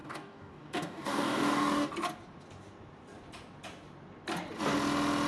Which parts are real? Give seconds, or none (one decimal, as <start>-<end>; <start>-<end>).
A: 1.9-5.3